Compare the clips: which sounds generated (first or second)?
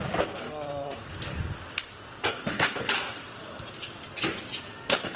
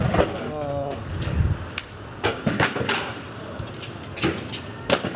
first